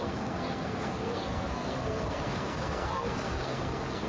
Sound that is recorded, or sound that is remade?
remade